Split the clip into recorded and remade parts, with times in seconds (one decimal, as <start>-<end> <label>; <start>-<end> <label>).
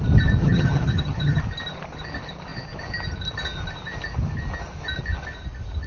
0.0-0.4 recorded; 0.4-1.4 remade; 1.4-5.9 recorded